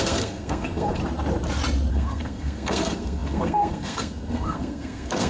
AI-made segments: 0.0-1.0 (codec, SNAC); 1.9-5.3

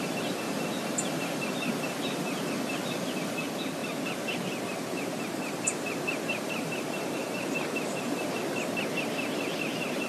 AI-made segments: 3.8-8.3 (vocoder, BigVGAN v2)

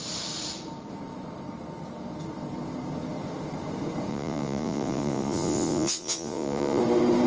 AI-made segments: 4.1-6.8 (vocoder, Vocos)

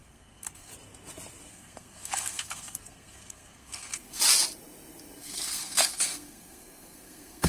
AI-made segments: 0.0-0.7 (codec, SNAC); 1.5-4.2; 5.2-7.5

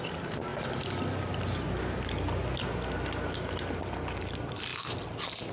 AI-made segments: none

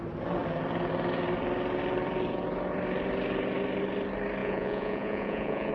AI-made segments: 4.4-5.7 (vocoder, Vocos)

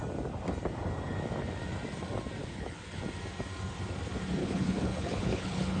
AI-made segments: 2.4-3.0 (codec, HILCodec); 4.4-5.8